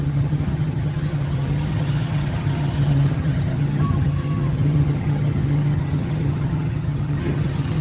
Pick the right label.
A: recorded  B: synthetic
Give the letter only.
B